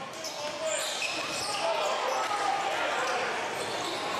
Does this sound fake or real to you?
real